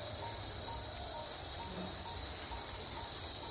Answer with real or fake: real